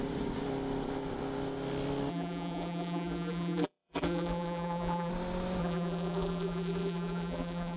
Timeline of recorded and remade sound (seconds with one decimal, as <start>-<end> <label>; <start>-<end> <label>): 0.0-2.1 recorded; 2.1-5.1 remade; 5.1-5.6 recorded; 5.6-7.8 remade